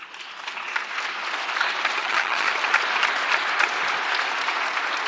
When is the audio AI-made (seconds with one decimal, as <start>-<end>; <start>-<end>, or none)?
2.0-2.5